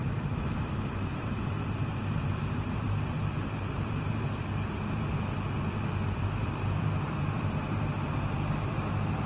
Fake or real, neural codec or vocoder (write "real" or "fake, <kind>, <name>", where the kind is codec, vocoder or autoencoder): fake, vocoder, BigVGAN v2